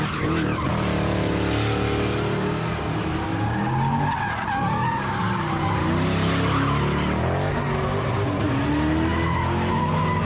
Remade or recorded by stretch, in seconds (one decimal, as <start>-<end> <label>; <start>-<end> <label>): 0.0-10.2 recorded